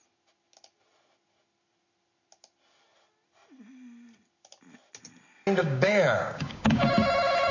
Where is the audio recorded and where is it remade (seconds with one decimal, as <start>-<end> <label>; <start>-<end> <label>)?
0.0-5.6 recorded; 5.6-6.9 remade; 6.9-7.5 recorded